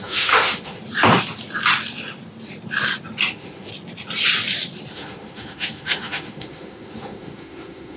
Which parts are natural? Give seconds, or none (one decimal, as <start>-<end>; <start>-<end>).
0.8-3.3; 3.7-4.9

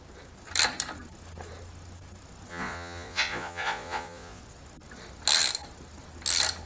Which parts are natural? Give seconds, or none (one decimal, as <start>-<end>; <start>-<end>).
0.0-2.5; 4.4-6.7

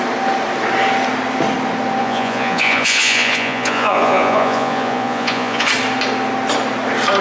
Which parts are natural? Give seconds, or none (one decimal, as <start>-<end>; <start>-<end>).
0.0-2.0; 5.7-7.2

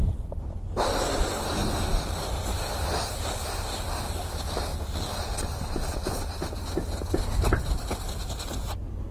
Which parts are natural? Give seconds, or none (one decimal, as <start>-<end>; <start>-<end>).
0.0-9.1

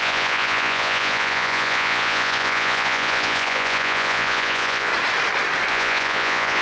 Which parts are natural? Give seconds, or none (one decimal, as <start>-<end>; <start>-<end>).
4.9-5.7

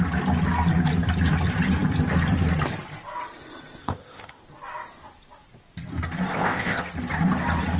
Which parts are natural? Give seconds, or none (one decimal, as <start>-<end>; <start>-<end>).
0.0-3.8; 4.4-6.3; 6.8-7.8

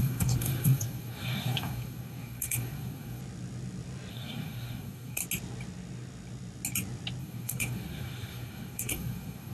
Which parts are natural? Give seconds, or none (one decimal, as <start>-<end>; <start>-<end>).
3.2-4.1; 5.2-7.2